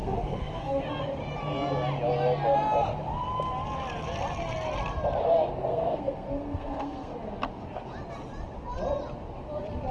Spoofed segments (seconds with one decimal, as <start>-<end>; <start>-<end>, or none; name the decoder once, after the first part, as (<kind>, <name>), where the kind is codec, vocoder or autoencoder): 0.0-0.8 (codec, SNAC); 5.7-7.1